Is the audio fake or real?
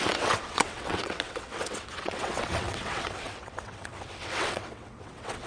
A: fake